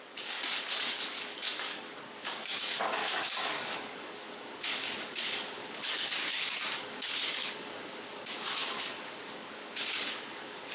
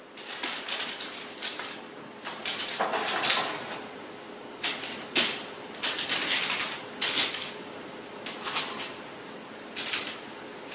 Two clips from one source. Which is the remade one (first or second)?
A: first